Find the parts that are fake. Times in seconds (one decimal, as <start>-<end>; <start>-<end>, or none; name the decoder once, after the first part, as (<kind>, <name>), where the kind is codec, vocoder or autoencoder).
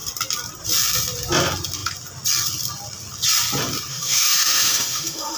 3.9-5.4 (autoencoder, DAC-VAE)